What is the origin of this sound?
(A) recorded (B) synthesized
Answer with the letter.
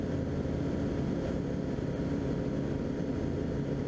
A